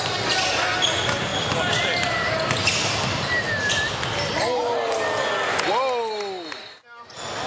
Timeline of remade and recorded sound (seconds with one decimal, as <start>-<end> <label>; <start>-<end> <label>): 0.0-7.5 recorded